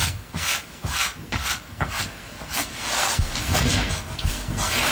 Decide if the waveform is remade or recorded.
remade